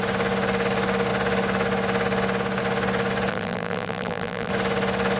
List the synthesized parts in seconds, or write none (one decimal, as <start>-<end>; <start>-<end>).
3.3-4.5